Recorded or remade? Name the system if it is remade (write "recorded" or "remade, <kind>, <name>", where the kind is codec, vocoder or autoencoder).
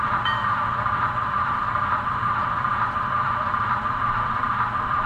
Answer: remade, vocoder, BigVGAN v2